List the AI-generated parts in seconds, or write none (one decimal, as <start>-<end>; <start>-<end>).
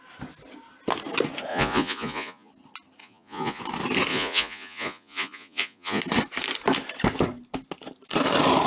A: 1.5-2.5; 3.0-3.6; 4.1-6.0